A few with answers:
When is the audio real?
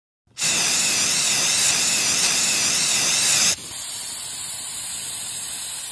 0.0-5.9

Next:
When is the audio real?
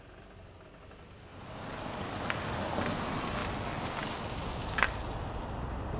0.0-6.0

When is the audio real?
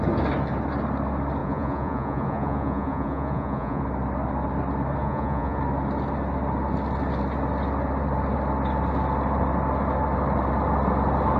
0.0-1.4; 3.8-5.0; 5.6-11.4